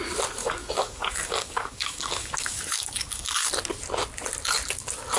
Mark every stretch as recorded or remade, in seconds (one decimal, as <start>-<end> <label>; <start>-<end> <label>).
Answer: 0.0-0.4 recorded; 0.4-3.5 remade; 3.5-5.2 recorded